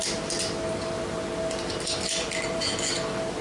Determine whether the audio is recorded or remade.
recorded